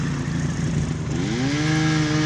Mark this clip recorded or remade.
recorded